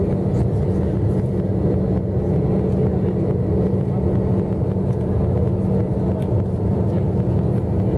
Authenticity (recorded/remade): recorded